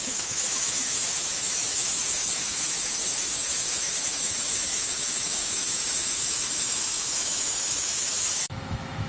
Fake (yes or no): yes